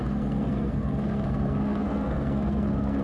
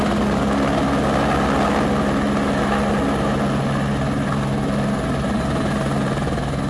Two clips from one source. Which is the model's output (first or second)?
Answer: first